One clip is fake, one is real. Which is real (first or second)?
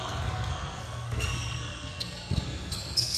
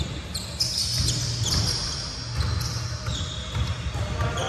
second